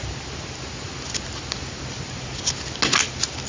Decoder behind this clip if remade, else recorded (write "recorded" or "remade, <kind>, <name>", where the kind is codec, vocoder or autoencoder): recorded